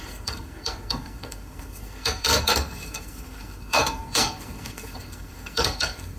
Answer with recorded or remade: remade